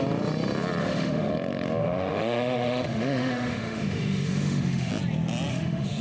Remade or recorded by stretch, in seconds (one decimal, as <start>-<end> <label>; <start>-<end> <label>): 0.0-0.8 recorded; 0.8-1.3 remade; 1.3-1.8 recorded; 1.8-4.9 remade; 4.9-5.5 recorded; 5.5-6.0 remade